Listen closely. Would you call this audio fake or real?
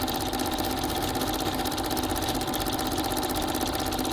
real